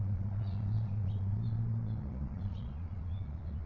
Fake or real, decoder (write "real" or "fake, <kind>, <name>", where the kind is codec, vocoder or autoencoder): fake, vocoder, Vocos